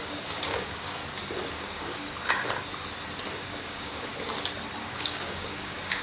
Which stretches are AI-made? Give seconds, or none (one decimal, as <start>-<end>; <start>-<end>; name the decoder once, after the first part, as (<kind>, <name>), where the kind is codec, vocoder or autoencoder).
0.0-1.0 (codec, DAC); 1.5-2.0; 3.4-4.1; 4.8-6.0